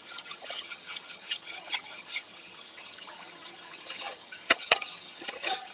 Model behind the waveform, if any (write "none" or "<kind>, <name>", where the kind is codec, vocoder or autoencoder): vocoder, HiFi-GAN